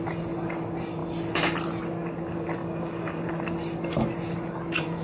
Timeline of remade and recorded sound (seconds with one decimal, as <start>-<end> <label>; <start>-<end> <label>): 0.0-2.6 recorded; 2.6-3.4 remade; 3.4-5.0 recorded